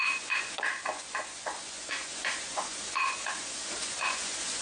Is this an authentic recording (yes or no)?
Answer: no